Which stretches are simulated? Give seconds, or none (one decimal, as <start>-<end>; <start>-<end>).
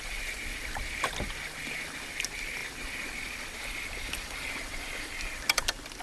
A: none